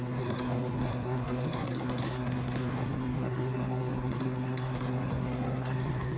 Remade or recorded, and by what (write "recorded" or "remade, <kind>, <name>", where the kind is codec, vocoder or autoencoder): remade, codec, SNAC